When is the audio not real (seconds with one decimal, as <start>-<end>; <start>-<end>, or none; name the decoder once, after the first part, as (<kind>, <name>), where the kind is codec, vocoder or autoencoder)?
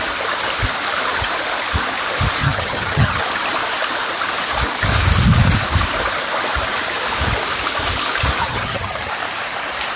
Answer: 2.4-3.2 (vocoder, HiFi-GAN); 8.4-9.1